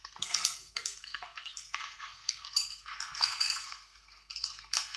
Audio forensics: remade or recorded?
remade